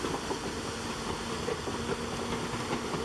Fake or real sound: real